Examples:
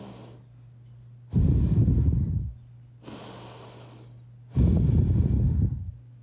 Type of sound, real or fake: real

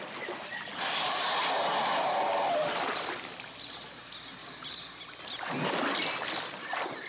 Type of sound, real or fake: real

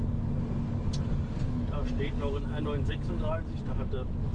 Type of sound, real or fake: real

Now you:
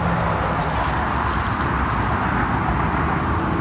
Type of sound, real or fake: real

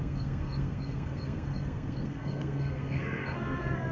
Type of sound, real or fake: fake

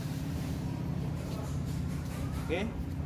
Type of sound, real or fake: fake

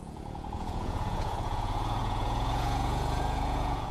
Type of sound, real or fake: fake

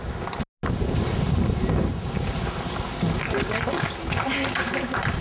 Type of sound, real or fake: real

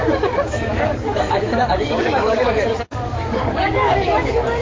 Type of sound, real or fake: fake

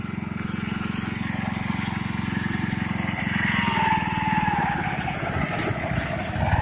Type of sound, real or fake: real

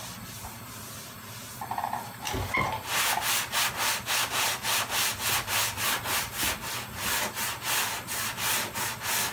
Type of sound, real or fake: real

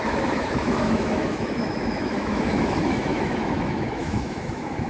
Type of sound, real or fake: fake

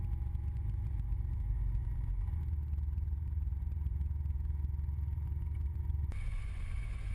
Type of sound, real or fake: fake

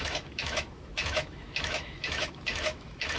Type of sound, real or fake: fake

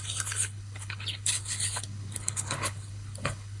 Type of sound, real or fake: fake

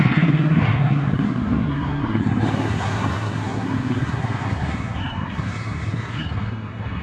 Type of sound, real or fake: fake